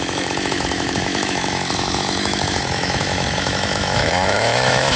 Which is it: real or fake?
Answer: fake